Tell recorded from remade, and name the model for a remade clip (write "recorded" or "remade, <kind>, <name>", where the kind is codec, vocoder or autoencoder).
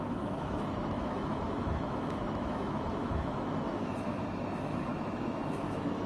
remade, autoencoder, DAC-VAE